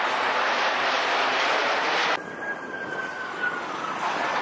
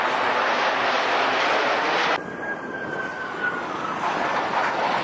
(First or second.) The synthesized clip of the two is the first